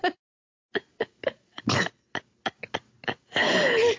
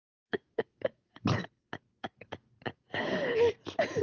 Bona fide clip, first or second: first